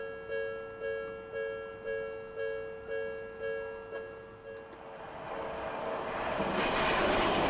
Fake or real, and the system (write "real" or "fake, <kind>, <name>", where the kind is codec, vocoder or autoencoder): real